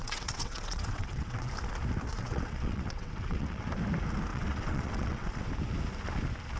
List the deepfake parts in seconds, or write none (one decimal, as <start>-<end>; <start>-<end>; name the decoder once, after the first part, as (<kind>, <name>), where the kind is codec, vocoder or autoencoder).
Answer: 0.0-1.5 (vocoder, WaveNeXt); 2.1-3.7; 4.3-5.5